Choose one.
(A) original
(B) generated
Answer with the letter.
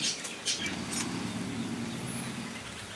A